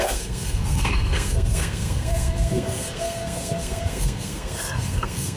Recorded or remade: remade